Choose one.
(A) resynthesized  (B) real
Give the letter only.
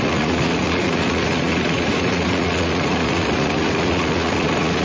A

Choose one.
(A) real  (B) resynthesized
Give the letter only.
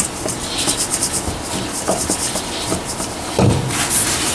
A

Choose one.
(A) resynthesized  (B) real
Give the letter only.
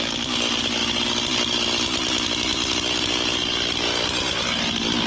B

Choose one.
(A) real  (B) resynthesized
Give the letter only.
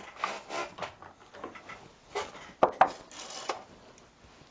A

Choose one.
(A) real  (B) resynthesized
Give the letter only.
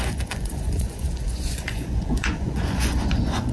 B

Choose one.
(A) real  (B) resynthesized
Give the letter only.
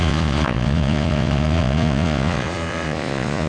B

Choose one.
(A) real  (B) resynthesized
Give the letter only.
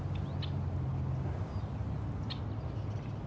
A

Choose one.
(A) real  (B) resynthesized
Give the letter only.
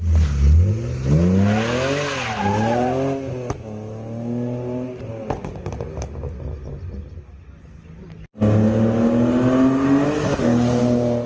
A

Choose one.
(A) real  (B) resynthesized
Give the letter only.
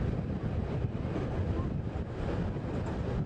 A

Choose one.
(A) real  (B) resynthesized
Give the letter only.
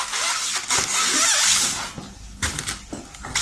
A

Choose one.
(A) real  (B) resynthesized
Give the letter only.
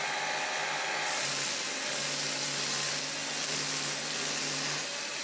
A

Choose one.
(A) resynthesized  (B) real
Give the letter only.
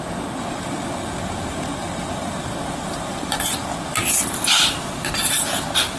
B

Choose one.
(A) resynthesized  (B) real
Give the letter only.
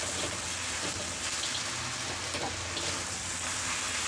B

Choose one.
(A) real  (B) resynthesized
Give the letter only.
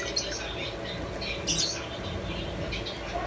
A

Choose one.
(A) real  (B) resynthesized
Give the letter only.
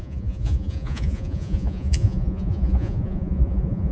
B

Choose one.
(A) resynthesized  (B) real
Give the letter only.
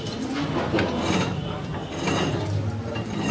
B